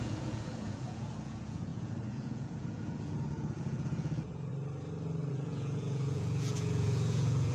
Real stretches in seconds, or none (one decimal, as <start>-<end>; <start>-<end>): 4.5-5.3